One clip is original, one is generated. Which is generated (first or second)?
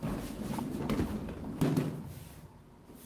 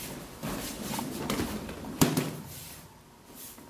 second